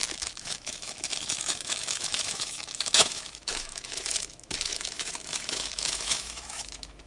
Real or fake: fake